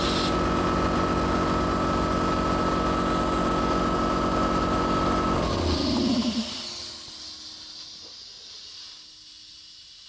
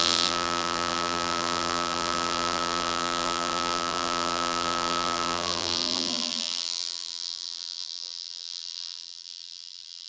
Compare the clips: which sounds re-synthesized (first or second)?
second